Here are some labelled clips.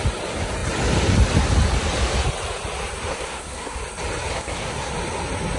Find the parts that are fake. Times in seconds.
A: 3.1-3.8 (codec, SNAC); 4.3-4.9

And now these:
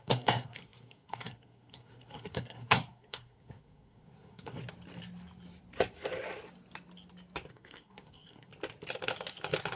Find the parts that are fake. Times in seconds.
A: 0.0-4.6 (codec, SNAC); 7.5-8.5

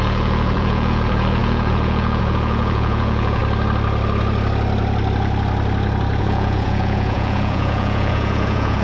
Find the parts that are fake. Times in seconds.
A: 0.0-3.4 (vocoder, Vocos); 6.2-8.8

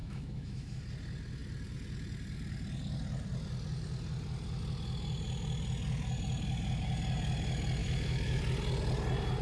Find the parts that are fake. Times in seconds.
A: 0.0-0.8 (autoencoder, DAC-VAE); 7.8-8.4